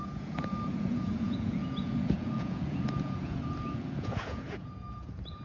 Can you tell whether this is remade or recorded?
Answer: remade